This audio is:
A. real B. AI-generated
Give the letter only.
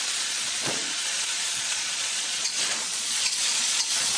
B